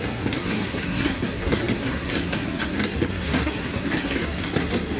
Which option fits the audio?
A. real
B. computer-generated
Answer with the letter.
B